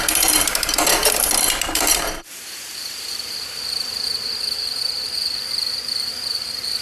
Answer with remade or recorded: remade